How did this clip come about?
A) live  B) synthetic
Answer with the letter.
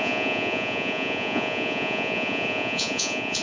B